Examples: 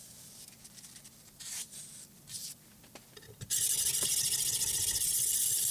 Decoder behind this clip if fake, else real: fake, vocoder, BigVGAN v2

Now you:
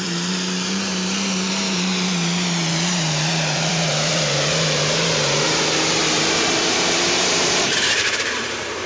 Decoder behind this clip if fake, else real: fake, vocoder, BigVGAN v2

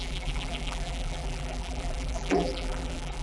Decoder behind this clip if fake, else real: fake, vocoder, BigVGAN v2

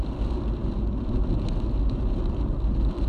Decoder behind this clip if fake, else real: fake, vocoder, BigVGAN v2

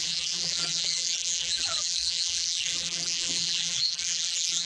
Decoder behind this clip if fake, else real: fake, vocoder, BigVGAN v2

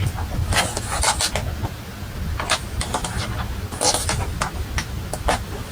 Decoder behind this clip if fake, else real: real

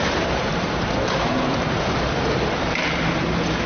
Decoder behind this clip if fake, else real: fake, vocoder, BigVGAN v2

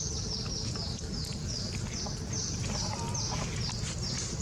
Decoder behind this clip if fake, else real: real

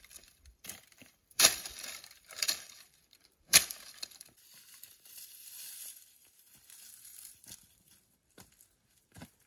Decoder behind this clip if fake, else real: fake, vocoder, BigVGAN v2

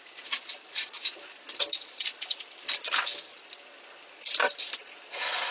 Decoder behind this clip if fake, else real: real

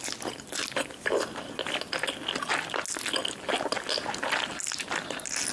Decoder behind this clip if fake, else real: real